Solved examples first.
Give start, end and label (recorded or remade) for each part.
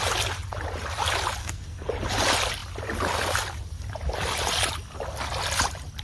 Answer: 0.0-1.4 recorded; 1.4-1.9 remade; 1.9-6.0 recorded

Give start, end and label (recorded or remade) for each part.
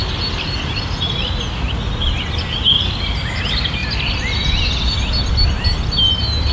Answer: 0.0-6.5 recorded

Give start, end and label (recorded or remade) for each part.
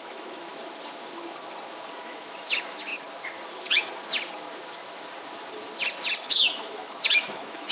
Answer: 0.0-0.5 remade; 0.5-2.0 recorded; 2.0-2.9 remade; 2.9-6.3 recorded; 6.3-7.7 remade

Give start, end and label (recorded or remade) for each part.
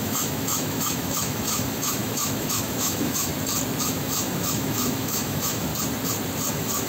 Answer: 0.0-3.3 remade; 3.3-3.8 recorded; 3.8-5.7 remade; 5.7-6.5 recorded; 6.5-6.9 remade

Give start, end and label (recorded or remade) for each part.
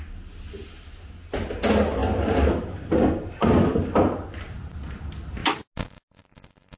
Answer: 0.0-6.8 recorded